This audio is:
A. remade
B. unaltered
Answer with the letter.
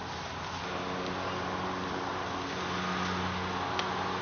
B